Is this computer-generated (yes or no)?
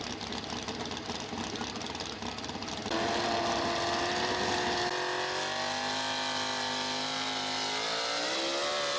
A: no